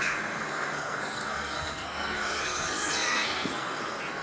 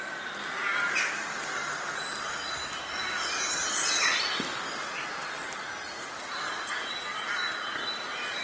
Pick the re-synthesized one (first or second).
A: first